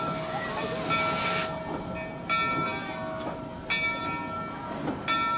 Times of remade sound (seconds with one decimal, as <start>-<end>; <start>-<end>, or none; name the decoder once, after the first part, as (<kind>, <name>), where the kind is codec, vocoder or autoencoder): none